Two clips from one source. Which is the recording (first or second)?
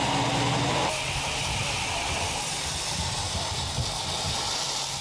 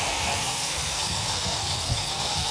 first